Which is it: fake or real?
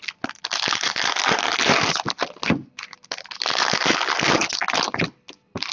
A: real